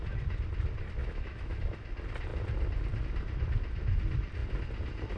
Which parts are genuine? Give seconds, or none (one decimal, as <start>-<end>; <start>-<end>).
0.0-1.0; 1.6-5.2